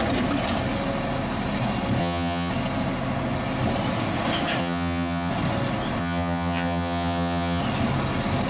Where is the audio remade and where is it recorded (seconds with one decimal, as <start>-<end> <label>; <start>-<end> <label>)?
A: 0.0-2.0 recorded; 2.0-2.5 remade; 2.5-4.6 recorded; 4.6-5.3 remade; 5.3-6.0 recorded; 6.0-7.6 remade; 7.6-8.5 recorded